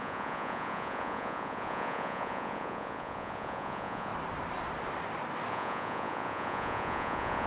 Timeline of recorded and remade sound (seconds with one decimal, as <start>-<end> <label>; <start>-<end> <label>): 0.0-4.1 remade; 4.1-5.5 recorded; 5.5-7.5 remade